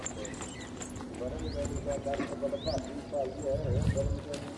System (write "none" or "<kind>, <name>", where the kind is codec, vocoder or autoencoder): none